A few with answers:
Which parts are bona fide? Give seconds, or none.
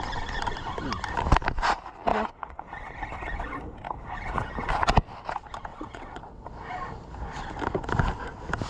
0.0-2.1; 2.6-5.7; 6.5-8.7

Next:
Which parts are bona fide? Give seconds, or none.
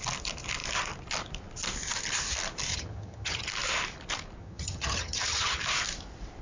0.0-2.7; 3.5-4.4; 5.6-6.4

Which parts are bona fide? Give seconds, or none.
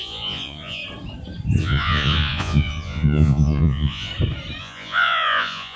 0.8-1.6; 4.1-4.6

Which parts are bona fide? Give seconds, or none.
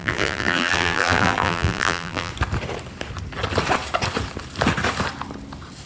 2.3-5.9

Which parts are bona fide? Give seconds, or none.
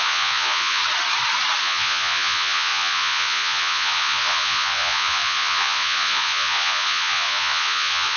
0.8-1.6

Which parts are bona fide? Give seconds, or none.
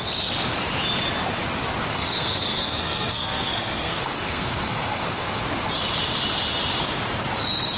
0.0-1.9; 5.4-7.8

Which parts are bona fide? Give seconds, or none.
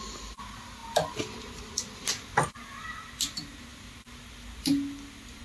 0.0-5.4